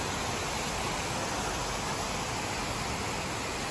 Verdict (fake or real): real